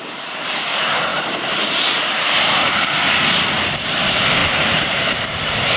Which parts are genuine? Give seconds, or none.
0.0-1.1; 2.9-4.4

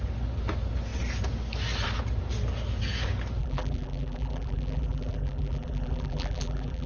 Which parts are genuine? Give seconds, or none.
0.0-3.4

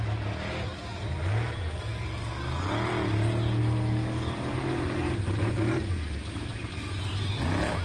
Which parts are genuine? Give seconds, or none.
0.0-4.5; 5.2-6.5; 7.3-7.8

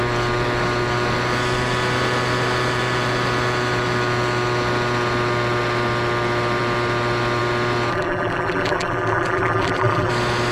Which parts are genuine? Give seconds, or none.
0.0-7.9; 10.1-10.5

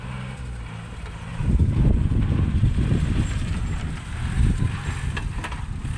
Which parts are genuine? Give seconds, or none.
0.0-1.3; 4.9-6.0

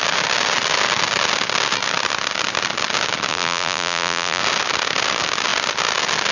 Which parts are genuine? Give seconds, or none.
0.0-3.3; 4.4-6.3